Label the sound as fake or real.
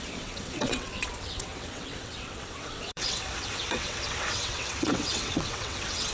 fake